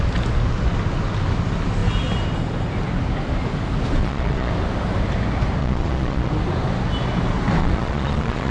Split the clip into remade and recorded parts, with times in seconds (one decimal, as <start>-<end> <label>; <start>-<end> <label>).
0.0-4.0 recorded; 4.0-4.5 remade; 4.5-5.6 recorded; 5.6-6.3 remade; 6.3-7.6 recorded; 7.6-8.5 remade